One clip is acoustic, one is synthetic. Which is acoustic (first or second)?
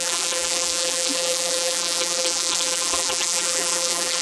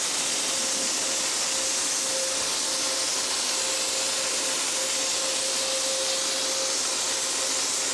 second